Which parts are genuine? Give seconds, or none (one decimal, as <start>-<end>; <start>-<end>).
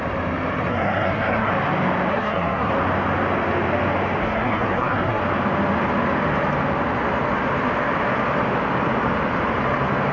0.0-0.7; 1.5-2.1; 2.7-4.2; 5.2-10.1